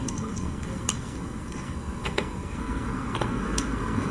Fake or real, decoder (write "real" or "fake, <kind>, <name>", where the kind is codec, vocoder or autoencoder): fake, codec, SNAC